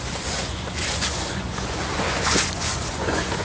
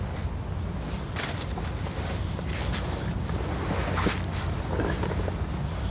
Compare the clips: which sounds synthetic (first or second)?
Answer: first